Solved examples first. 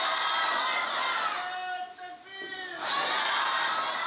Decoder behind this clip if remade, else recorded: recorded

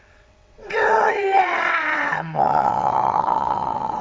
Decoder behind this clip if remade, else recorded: remade, vocoder, WaveNeXt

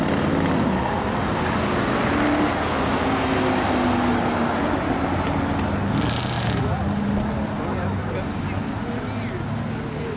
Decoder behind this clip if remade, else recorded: recorded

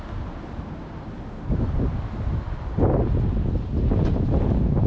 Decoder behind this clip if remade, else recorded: recorded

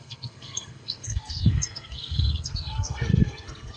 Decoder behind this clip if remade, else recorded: remade, codec, SNAC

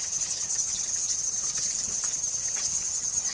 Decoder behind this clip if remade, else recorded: remade, vocoder, HiFi-GAN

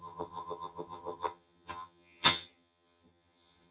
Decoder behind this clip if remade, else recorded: remade, vocoder, HiFi-GAN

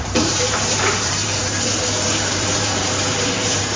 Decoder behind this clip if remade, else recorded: remade, vocoder, BigVGAN v2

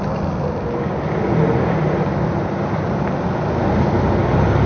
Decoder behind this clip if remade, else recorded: recorded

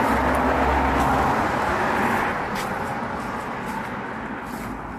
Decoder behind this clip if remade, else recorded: recorded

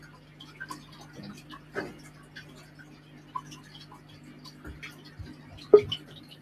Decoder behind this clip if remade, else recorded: recorded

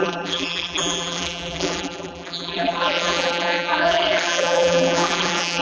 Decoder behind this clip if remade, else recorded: remade, vocoder, BigVGAN v2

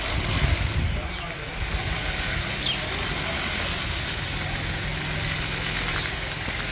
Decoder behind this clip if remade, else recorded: recorded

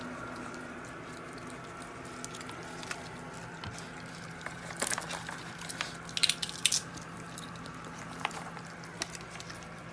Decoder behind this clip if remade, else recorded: recorded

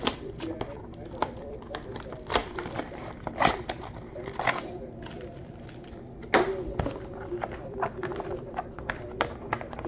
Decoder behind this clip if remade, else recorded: remade, vocoder, BigVGAN v2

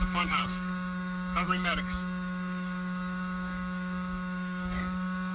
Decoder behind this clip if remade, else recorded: remade, codec, DAC